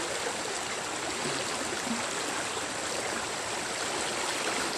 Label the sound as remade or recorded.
recorded